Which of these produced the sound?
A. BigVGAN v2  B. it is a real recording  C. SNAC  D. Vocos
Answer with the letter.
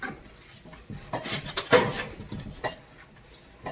B